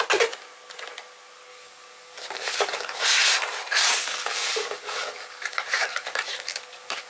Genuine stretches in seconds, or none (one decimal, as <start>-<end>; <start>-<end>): 0.0-1.5; 3.2-4.0

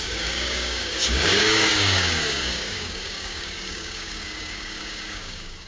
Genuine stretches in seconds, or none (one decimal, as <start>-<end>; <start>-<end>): none

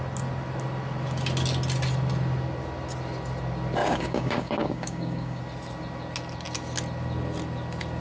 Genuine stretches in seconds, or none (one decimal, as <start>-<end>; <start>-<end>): 0.0-3.8; 5.4-8.0

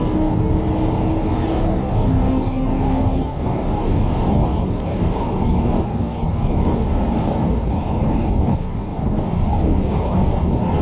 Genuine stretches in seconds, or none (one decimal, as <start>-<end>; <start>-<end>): 0.6-1.2

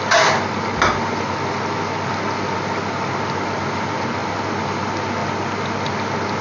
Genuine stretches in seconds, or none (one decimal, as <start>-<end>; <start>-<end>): 0.0-6.4

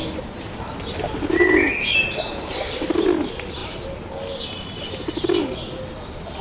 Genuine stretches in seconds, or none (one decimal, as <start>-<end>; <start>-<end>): 0.0-6.4